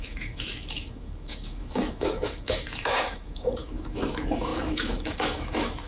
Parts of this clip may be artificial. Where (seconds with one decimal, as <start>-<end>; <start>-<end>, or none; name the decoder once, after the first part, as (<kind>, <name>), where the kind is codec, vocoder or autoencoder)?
0.0-5.9 (autoencoder, DAC-VAE)